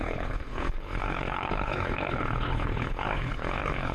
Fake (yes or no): yes